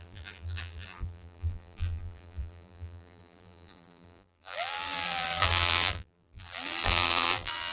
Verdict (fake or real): fake